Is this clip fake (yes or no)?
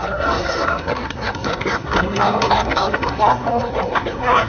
yes